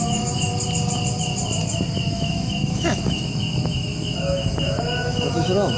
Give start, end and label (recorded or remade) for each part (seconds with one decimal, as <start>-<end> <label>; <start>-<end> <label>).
0.0-0.5 remade; 0.5-2.1 recorded; 2.1-5.8 remade

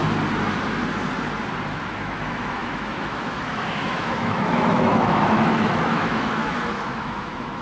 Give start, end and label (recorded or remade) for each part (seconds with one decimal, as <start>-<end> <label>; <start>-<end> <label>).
0.0-1.8 recorded; 1.8-7.6 remade

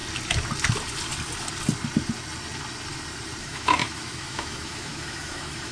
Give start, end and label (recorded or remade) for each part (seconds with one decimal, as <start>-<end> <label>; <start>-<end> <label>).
0.0-3.4 recorded; 3.4-5.7 remade

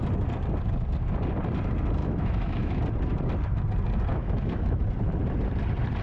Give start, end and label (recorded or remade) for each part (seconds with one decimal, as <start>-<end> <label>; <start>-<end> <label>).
0.0-2.0 recorded; 2.0-2.8 remade; 2.8-4.1 recorded; 4.1-4.8 remade; 4.8-6.0 recorded

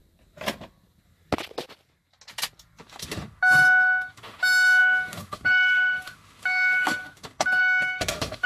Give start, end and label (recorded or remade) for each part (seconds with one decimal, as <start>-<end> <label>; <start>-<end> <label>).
0.0-2.8 recorded; 2.8-8.5 remade

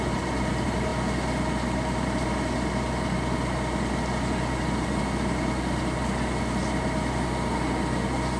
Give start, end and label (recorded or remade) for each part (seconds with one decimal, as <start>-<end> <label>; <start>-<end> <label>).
0.0-8.4 recorded

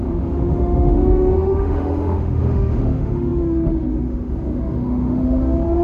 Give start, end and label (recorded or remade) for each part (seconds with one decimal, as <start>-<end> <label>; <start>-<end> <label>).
0.0-5.8 remade

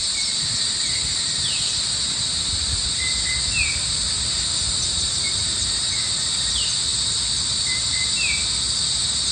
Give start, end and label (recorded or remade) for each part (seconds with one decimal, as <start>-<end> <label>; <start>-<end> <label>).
0.0-9.3 recorded